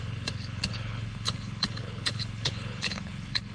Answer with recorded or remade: remade